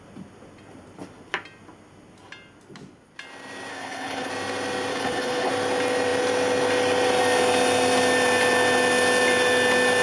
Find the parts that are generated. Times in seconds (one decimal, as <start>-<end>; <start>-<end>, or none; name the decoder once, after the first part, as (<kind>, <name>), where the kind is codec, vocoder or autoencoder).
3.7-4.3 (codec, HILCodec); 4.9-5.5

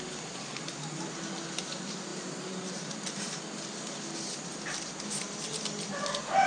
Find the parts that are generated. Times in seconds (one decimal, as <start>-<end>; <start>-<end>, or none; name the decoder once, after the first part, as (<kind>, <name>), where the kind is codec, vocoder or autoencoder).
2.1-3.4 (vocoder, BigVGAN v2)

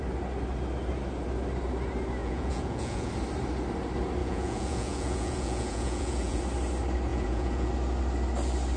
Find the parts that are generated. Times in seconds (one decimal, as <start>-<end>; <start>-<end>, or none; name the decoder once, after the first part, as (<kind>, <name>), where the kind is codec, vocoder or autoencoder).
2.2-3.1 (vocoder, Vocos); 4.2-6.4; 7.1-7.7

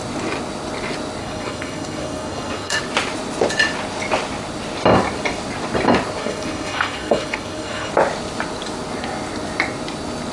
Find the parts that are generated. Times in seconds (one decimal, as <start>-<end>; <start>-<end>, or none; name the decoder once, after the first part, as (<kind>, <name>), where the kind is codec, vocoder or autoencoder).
1.2-2.8 (codec, SNAC); 6.2-7.9